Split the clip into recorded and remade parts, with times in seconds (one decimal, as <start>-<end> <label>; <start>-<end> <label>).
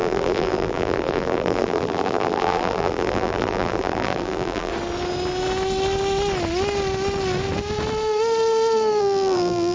0.0-4.7 remade; 4.7-9.0 recorded; 9.0-9.7 remade